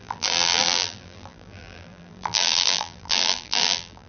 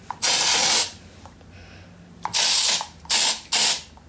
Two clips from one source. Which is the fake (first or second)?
first